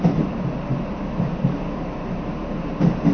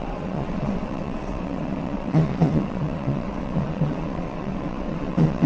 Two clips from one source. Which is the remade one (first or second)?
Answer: second